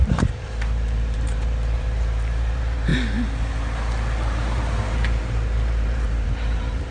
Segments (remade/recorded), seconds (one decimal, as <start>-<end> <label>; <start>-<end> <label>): 0.0-2.9 remade; 2.9-4.9 recorded; 4.9-6.9 remade